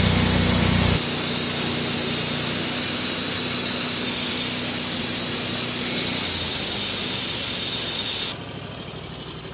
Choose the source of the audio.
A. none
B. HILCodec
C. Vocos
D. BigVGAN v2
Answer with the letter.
A